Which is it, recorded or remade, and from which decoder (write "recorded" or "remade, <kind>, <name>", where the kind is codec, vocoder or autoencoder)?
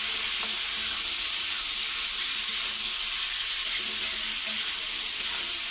recorded